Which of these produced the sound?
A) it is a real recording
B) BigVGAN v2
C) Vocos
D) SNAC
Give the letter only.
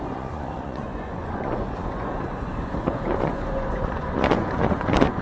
C